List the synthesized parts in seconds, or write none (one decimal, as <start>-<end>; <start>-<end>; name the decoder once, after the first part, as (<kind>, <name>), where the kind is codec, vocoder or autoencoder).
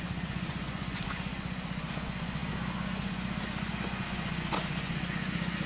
0.0-5.7 (vocoder, Vocos)